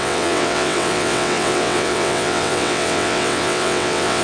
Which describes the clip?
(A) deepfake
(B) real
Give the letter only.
A